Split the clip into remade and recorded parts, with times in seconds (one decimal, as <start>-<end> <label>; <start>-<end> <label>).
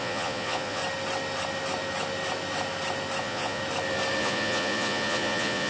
0.0-0.8 remade; 0.8-3.2 recorded; 3.2-3.6 remade; 3.6-4.2 recorded; 4.2-5.7 remade